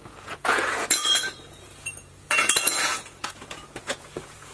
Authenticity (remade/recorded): remade